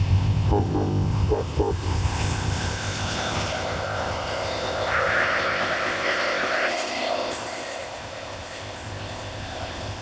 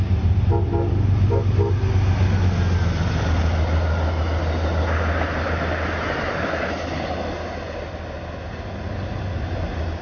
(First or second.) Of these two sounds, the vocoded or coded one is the first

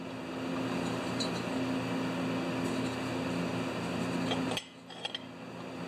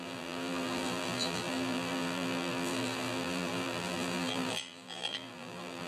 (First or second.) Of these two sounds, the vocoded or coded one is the second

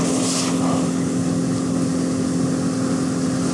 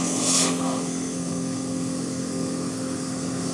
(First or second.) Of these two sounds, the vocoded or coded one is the second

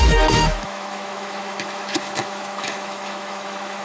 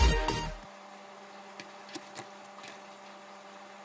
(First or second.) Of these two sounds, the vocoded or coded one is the first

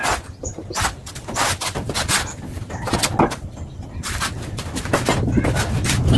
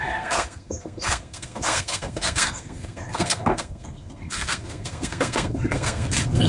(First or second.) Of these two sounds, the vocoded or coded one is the second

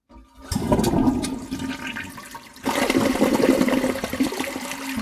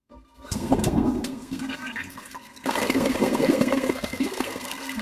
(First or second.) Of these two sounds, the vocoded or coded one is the second